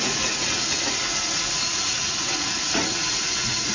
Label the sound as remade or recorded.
remade